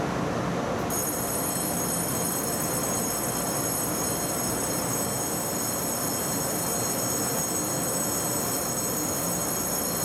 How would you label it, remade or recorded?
recorded